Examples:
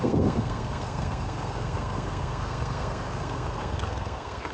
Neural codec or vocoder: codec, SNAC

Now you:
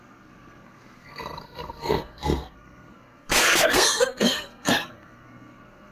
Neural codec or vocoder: codec, SNAC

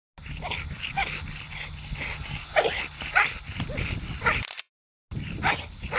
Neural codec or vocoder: none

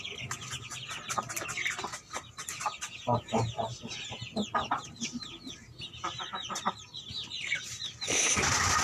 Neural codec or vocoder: none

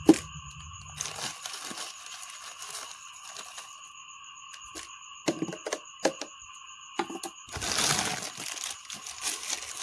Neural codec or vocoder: none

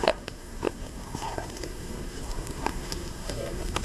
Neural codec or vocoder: codec, SNAC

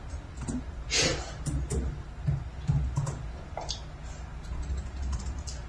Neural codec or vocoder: none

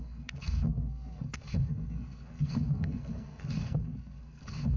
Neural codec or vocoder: codec, SNAC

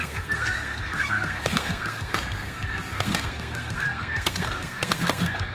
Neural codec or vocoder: codec, SNAC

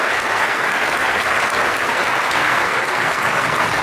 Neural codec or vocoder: codec, SNAC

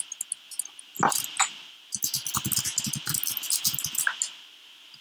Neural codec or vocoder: none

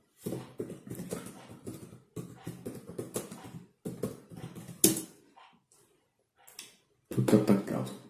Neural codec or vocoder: none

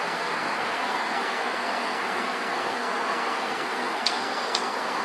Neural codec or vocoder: codec, SNAC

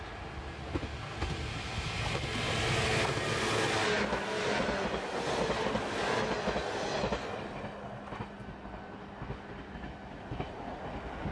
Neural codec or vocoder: none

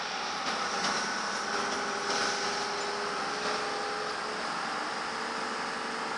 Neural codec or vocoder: none